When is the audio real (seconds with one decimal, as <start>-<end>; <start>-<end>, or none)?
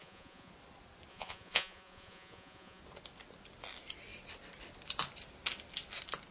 0.5-1.1; 2.8-6.3